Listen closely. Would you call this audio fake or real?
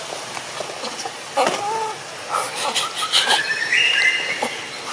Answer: real